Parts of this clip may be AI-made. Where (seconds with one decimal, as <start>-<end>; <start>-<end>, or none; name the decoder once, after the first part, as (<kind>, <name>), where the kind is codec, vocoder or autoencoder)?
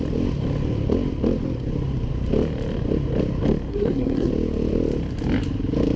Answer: 3.7-4.3 (codec, SNAC)